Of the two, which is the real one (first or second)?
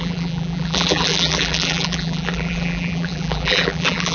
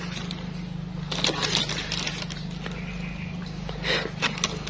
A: second